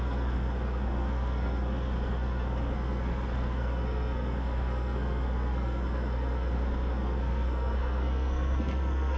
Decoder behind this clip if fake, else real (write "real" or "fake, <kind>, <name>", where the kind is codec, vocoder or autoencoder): fake, codec, SNAC